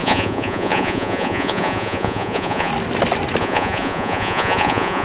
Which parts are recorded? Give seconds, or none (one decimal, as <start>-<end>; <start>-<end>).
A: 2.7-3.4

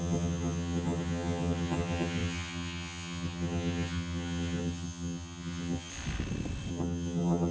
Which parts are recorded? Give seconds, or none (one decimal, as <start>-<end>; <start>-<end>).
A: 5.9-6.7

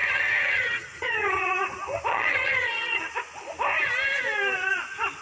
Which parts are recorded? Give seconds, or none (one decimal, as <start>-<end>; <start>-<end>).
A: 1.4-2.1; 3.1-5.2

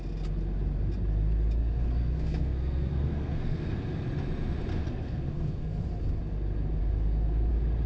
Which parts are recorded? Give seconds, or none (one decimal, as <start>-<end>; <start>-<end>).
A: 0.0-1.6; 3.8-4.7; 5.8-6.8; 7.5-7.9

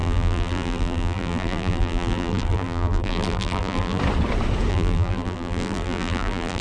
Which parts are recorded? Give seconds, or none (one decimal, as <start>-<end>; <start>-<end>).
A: 4.0-4.7

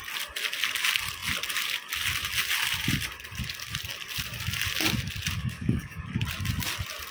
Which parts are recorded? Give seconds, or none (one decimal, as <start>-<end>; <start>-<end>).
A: 0.0-5.4; 6.0-7.1

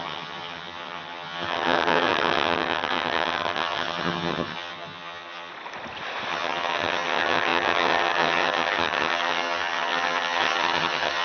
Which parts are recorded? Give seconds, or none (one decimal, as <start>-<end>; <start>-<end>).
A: 5.5-6.3

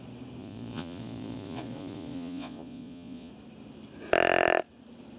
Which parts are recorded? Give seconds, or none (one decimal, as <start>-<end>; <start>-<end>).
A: 0.0-0.4; 3.3-5.2